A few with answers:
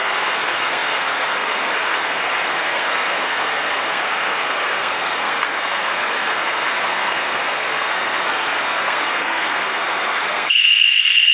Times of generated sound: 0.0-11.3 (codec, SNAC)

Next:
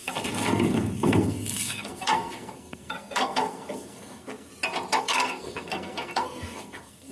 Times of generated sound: 0.0-4.5 (codec, SNAC); 5.0-7.1

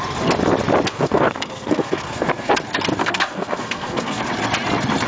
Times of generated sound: 0.9-2.5 (codec, SNAC); 3.0-4.2